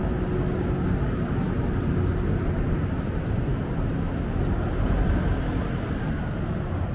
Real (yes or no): yes